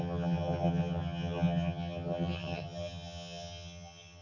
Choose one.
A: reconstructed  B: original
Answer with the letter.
A